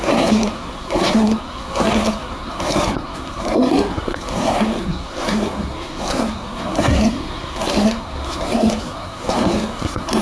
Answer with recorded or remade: remade